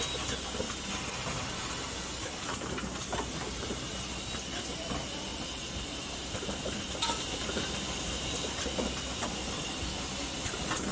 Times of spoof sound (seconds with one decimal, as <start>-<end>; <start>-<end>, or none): 2.1-4.0; 5.3-8.7

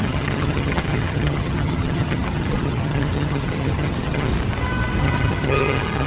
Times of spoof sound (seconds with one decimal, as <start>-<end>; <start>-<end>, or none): 0.0-4.3; 5.0-6.1